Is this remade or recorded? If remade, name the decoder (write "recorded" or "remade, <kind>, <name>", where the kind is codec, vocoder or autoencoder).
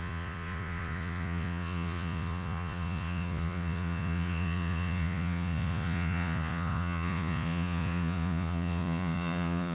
remade, vocoder, Vocos